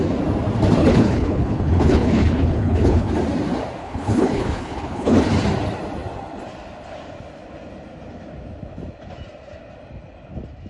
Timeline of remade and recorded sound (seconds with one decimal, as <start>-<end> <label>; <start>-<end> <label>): 0.0-0.8 recorded; 0.8-3.1 remade; 3.1-3.8 recorded; 3.8-5.2 remade; 5.2-10.7 recorded